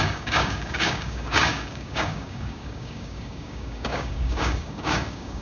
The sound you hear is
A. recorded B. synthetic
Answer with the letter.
B